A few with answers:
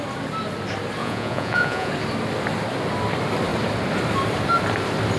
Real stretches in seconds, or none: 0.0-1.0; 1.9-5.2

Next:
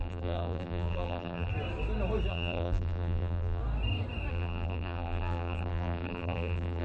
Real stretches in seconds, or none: 1.5-2.3; 3.6-4.3

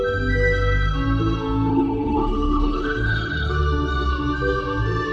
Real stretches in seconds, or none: 0.0-1.7; 3.5-5.1

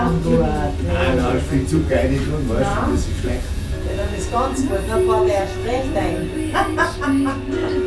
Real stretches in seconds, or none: 0.0-2.7; 4.7-5.6; 6.1-7.9